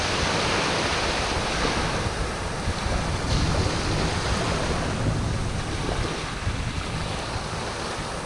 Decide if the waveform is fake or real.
real